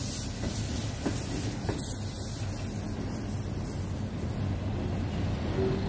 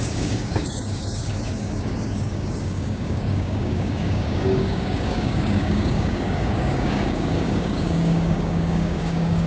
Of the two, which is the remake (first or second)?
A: second